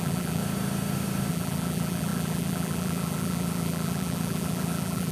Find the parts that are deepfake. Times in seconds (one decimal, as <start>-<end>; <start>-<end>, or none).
0.0-0.4; 1.3-5.1